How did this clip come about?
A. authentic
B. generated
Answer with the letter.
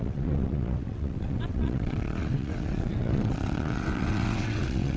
B